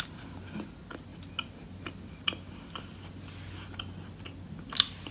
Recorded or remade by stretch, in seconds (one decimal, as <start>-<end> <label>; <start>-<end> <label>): 0.0-5.1 recorded